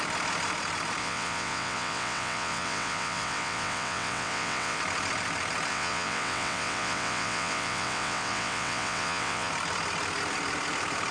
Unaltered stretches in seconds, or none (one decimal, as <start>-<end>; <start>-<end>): 0.0-1.0; 4.8-5.7; 9.5-11.1